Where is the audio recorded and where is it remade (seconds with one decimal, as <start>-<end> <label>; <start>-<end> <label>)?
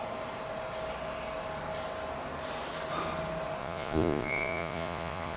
0.0-3.6 recorded; 3.6-5.4 remade